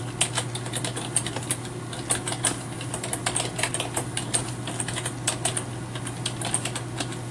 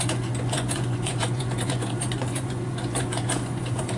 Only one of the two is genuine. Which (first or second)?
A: first